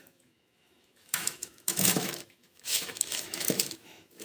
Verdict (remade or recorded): remade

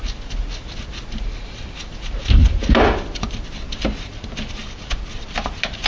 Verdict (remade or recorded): recorded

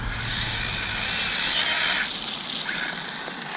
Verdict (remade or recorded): recorded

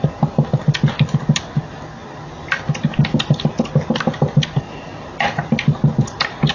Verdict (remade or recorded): recorded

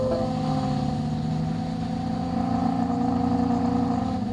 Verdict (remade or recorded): recorded